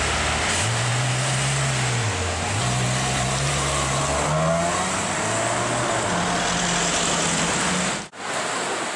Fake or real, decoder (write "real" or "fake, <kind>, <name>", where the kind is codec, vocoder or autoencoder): real